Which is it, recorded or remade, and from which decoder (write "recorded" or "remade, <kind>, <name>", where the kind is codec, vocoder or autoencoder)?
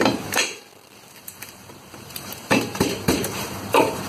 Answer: remade, vocoder, BigVGAN v2